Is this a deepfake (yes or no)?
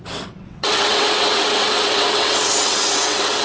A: yes